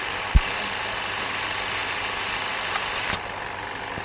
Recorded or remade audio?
recorded